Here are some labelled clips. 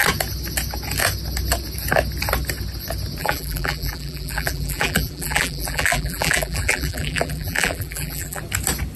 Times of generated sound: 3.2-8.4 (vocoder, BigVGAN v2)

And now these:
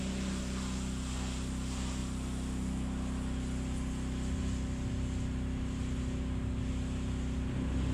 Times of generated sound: none

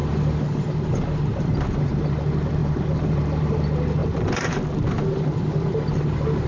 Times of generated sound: 1.3-2.0 (vocoder, BigVGAN v2); 2.6-3.6; 4.0-5.4

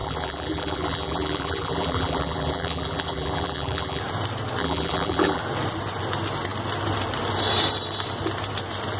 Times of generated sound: 0.0-4.0 (vocoder, BigVGAN v2); 4.6-5.4